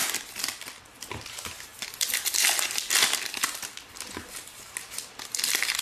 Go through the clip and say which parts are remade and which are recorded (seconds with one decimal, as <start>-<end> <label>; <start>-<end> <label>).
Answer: 0.0-5.8 recorded

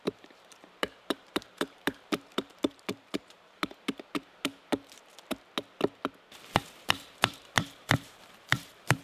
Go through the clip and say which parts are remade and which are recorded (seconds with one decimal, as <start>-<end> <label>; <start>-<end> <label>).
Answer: 0.0-3.6 remade; 3.6-6.8 recorded; 6.8-9.0 remade